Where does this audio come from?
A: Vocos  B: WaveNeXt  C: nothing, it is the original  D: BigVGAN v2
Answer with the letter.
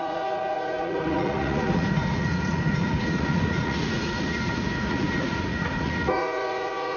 A